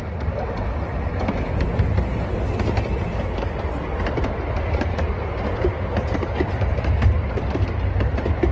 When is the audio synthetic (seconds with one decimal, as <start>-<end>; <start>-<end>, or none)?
none